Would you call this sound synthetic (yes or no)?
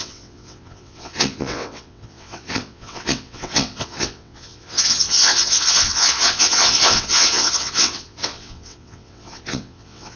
yes